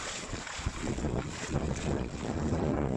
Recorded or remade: remade